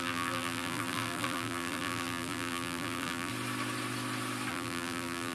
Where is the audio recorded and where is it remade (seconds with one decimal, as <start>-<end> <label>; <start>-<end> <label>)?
0.0-3.3 remade; 3.3-4.5 recorded; 4.5-5.3 remade